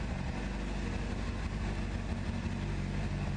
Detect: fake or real real